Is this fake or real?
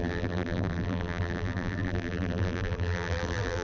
fake